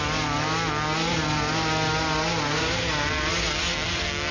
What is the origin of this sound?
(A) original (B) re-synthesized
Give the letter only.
A